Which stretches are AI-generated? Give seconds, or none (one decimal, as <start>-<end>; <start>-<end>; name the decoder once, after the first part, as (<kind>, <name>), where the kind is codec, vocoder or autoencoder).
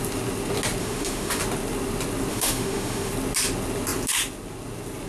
0.8-1.4 (autoencoder, DAC-VAE); 2.3-3.1